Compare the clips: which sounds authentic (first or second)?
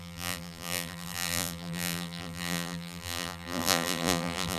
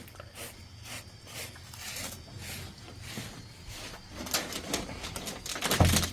second